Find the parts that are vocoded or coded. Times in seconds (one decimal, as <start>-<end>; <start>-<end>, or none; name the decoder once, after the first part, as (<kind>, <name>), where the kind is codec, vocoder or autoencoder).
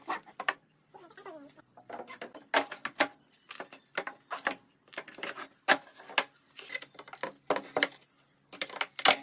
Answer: none